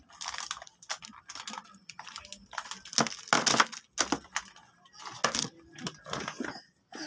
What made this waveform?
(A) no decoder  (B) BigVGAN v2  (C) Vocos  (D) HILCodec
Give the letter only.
A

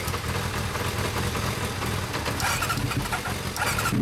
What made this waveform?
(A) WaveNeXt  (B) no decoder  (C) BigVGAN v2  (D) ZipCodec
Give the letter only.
B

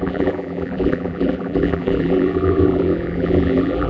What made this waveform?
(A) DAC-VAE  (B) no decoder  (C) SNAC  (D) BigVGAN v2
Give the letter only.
D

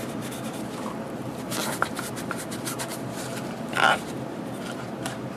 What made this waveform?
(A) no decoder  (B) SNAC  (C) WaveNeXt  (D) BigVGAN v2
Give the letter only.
D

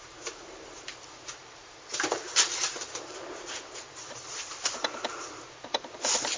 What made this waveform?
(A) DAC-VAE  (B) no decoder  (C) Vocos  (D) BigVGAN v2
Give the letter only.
D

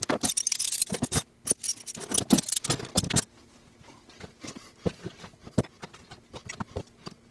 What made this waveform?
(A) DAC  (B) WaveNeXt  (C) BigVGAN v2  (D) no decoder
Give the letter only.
D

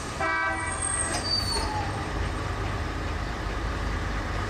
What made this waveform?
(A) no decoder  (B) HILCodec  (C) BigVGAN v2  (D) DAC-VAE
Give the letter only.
C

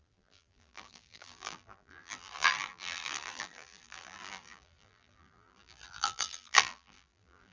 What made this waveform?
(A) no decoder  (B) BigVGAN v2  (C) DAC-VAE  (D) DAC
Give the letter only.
B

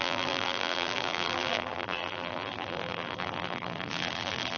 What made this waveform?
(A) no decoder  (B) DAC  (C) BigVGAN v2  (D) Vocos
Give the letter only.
C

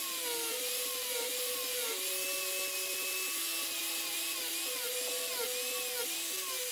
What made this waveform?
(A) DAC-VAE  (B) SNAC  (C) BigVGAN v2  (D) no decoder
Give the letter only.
D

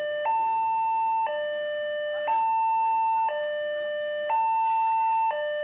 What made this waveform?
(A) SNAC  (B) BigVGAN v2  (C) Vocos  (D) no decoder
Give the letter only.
D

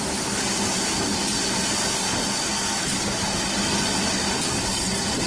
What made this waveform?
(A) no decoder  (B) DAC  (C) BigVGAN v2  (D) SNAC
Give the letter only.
A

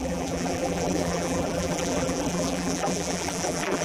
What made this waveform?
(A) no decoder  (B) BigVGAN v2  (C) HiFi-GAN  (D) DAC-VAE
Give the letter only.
B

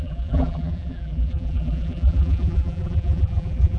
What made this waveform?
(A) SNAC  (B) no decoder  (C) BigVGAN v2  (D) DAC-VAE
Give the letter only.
C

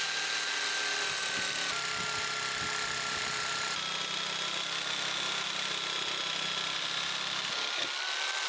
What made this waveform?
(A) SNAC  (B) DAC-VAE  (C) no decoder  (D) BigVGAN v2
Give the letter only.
C